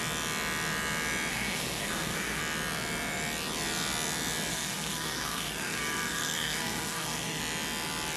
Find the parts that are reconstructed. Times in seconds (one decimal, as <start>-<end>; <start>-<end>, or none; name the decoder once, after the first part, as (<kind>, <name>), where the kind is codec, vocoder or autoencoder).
1.3-2.4 (codec, SNAC); 4.5-7.4